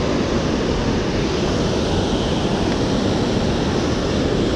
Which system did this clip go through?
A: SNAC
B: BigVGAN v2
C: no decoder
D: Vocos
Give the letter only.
C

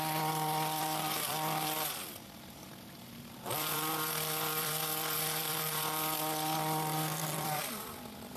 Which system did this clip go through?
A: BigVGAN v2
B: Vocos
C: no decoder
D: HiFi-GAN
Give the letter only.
A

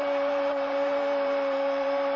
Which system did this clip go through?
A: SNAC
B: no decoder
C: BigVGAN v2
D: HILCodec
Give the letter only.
C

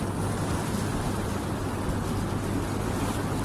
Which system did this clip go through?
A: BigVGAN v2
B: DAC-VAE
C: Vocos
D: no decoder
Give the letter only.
A